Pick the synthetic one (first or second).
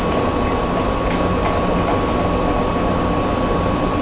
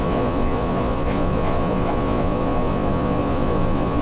second